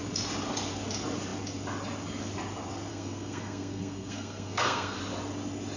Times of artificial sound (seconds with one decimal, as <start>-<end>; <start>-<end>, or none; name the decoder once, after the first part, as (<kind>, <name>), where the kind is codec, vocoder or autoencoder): 2.9-5.0 (codec, SNAC)